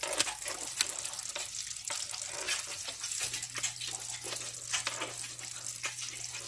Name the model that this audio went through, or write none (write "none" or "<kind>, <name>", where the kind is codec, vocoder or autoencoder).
none